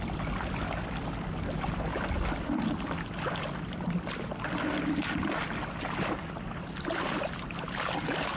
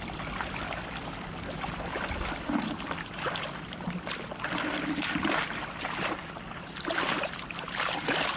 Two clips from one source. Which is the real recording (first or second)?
first